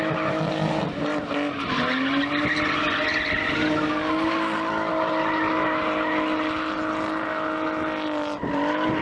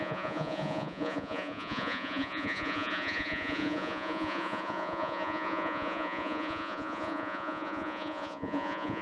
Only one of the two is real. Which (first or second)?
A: first